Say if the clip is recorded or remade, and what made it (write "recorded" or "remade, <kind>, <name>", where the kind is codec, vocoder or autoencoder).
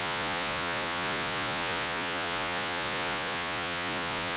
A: remade, vocoder, Vocos